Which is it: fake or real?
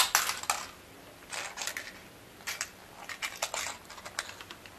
real